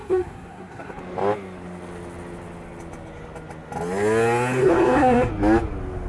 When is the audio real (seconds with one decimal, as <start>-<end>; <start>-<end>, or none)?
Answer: 1.0-4.6; 5.3-6.1